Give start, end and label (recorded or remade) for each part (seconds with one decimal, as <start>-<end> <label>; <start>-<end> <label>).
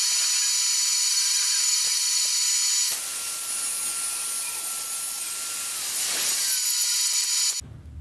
0.0-1.1 recorded; 1.1-2.3 remade; 2.3-8.0 recorded